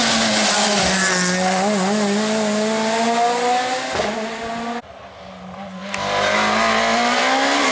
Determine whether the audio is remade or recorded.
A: recorded